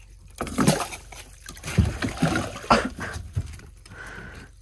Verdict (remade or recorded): recorded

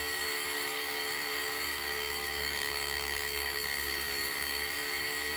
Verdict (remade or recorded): remade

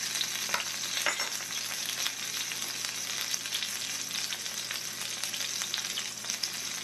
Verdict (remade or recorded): recorded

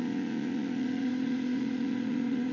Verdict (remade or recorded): remade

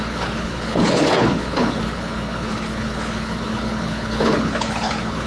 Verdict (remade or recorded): remade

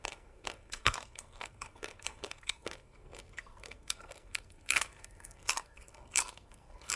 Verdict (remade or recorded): remade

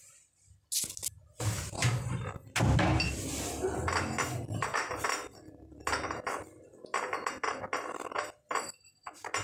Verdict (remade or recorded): recorded